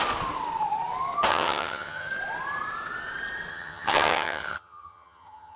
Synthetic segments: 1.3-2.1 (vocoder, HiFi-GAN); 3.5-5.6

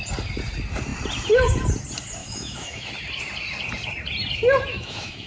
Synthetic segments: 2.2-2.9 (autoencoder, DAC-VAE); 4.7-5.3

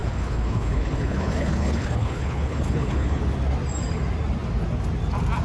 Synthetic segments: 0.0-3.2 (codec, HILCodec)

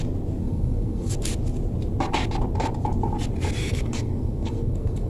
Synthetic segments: 0.4-1.1 (codec, SNAC); 3.6-5.1

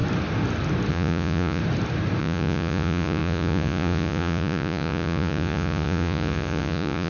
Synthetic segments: 0.9-1.6 (vocoder, Vocos); 2.2-7.1

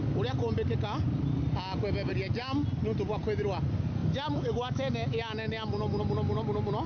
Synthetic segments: 4.0-6.0 (autoencoder, DAC-VAE)